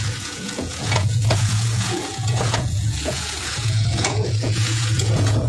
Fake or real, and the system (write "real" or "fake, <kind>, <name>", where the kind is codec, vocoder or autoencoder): fake, vocoder, Vocos